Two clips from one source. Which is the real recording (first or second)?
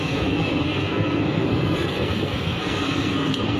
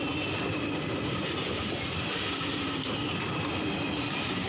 second